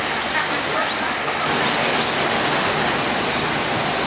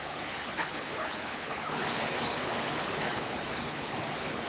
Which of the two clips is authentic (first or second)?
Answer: first